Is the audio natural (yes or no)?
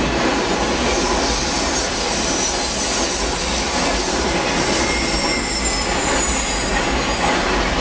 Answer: yes